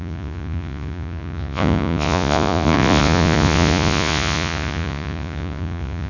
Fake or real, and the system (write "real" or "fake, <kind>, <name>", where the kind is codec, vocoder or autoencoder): fake, vocoder, Vocos